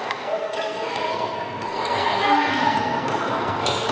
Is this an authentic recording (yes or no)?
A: no